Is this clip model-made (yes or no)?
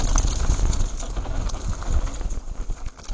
no